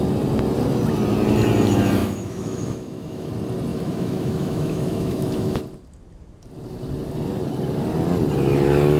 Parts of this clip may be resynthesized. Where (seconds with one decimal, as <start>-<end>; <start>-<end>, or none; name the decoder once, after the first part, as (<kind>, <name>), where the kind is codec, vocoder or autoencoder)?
2.0-3.3 (autoencoder, DAC-VAE); 3.7-5.6